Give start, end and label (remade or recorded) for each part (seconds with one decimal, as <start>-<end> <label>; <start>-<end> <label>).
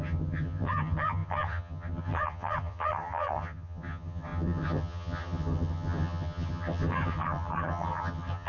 0.0-8.5 remade